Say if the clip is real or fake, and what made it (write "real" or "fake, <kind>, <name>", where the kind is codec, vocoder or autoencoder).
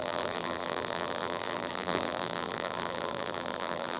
fake, vocoder, BigVGAN v2